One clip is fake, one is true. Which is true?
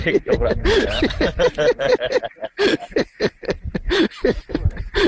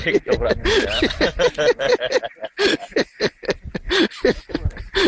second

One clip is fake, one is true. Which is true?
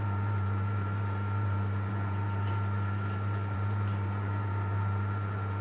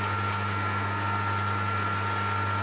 second